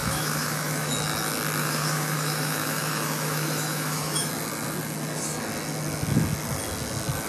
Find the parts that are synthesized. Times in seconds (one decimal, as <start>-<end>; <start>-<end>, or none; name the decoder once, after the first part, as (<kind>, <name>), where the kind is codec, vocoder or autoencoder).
0.0-0.9 (autoencoder, DAC-VAE); 1.6-4.3